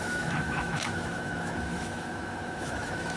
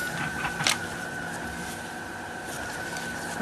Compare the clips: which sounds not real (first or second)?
first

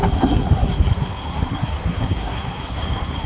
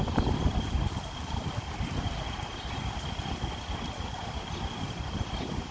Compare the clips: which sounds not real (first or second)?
first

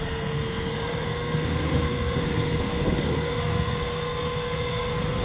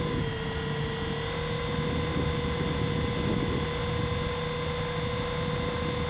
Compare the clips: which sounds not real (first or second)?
first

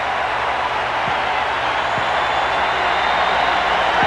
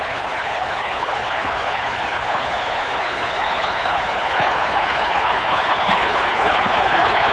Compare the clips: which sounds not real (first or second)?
second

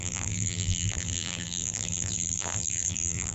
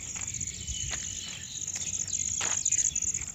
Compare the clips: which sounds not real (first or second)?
first